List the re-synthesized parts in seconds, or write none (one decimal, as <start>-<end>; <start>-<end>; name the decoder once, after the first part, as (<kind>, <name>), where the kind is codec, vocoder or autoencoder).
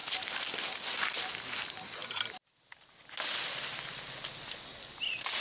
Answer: none